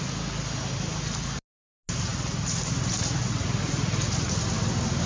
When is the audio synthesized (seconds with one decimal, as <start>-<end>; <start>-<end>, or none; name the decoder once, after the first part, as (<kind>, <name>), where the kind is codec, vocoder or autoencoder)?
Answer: none